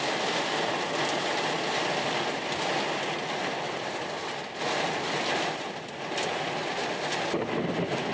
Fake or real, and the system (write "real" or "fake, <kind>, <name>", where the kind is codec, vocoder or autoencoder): real